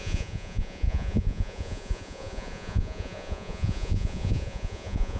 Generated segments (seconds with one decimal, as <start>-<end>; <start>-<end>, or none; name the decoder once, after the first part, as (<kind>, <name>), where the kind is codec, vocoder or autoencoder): 0.0-5.2 (vocoder, Vocos)